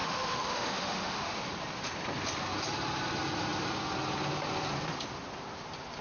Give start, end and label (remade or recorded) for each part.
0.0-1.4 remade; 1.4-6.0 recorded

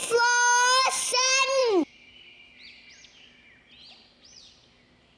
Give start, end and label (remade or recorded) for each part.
0.0-0.8 recorded; 0.8-5.2 remade

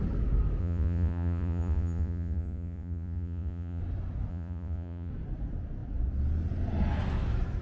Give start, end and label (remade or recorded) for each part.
0.0-0.6 recorded; 0.6-3.8 remade; 3.8-4.3 recorded; 4.3-5.1 remade; 5.1-7.6 recorded

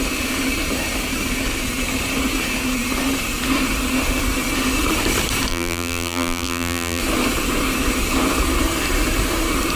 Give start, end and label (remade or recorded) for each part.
0.0-5.5 recorded; 5.5-7.0 remade; 7.0-9.8 recorded

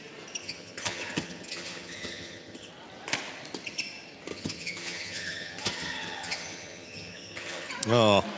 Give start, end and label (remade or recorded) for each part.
0.0-0.4 recorded; 0.4-2.7 remade; 2.7-4.3 recorded; 4.3-7.7 remade; 7.7-8.4 recorded

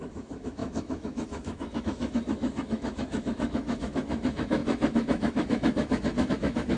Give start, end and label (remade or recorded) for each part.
0.0-6.8 remade